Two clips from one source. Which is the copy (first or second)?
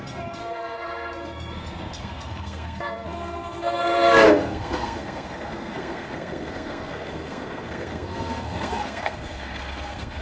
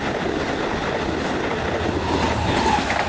first